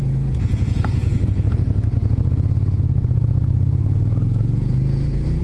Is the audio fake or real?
fake